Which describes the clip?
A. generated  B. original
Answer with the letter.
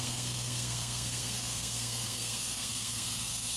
A